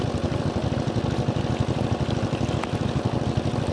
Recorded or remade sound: recorded